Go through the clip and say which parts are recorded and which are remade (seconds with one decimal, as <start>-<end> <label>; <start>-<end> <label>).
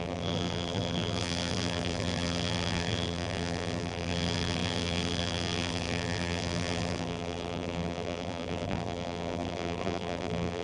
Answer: 0.0-10.6 remade